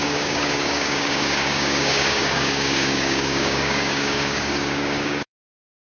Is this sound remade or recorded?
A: remade